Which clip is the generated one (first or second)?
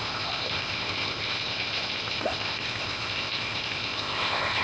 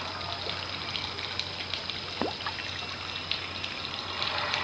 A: first